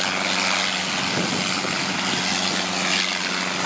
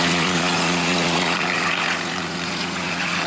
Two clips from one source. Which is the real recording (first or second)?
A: first